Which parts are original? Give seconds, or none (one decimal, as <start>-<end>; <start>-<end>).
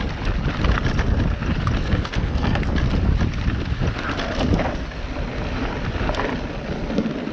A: 0.0-1.8; 2.6-7.3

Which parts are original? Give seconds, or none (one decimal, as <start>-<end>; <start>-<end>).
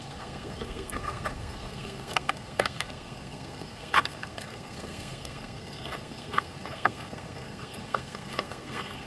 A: none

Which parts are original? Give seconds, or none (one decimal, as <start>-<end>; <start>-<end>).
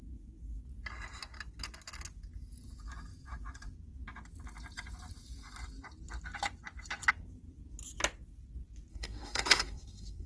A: 0.0-8.9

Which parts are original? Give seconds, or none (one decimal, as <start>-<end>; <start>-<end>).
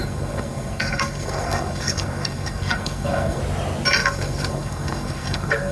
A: 3.4-4.0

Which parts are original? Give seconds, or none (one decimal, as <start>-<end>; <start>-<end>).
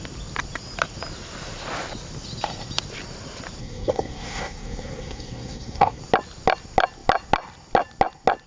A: 0.0-3.6; 6.0-8.5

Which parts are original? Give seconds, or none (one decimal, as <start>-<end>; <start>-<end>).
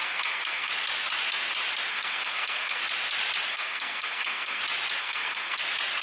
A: 0.7-1.9; 2.8-3.5; 4.6-5.0; 5.6-6.0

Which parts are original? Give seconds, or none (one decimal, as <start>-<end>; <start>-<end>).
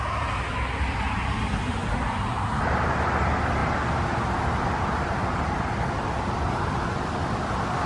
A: 0.0-7.9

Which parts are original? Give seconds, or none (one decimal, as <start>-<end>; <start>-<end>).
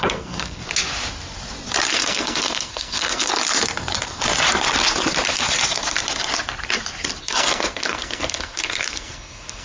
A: 0.6-1.9; 3.3-7.2